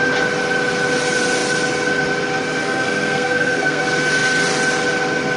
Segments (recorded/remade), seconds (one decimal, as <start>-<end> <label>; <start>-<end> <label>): 0.0-2.6 recorded; 2.6-3.8 remade; 3.8-5.4 recorded